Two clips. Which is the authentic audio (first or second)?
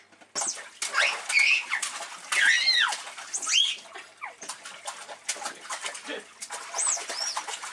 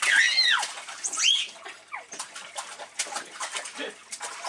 first